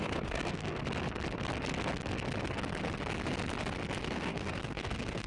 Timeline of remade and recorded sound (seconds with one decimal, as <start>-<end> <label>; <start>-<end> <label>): 0.0-0.8 remade; 0.8-4.0 recorded; 4.0-5.3 remade